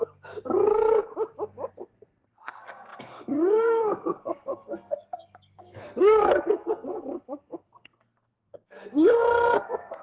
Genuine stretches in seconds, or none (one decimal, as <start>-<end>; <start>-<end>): 1.1-1.7